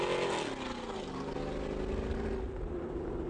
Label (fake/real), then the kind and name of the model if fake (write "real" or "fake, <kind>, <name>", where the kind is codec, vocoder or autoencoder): real